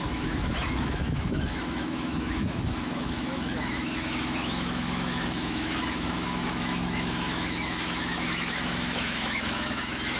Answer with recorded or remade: remade